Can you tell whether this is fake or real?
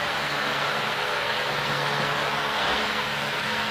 fake